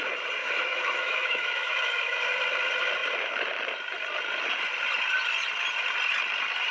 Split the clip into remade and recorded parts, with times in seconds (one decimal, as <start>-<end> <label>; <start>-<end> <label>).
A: 0.0-0.4 recorded; 0.4-2.2 remade; 2.2-6.7 recorded